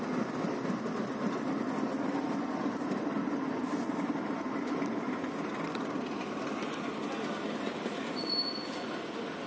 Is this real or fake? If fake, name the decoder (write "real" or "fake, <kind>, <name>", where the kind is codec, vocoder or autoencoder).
real